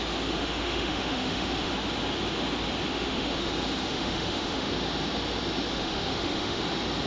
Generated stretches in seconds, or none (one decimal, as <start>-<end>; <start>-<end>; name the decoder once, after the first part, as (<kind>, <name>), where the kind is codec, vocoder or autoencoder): 0.4-1.7 (autoencoder, DAC-VAE); 2.9-3.5; 3.9-4.7; 5.7-6.6